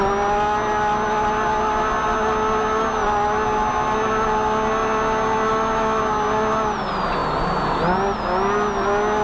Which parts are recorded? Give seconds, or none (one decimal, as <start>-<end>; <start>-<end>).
0.0-9.2